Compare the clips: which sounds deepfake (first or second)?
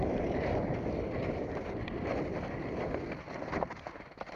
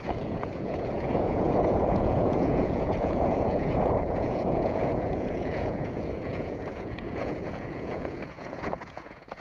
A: second